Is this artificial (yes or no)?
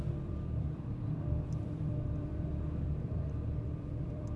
yes